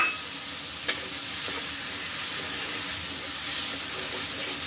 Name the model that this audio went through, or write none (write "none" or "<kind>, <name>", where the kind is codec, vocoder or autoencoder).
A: none